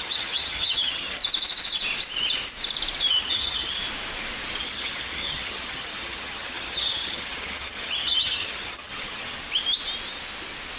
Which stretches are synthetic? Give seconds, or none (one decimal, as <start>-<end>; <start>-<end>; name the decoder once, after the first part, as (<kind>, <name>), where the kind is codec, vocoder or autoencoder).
0.0-1.2 (vocoder, HiFi-GAN); 3.1-3.8; 4.6-9.4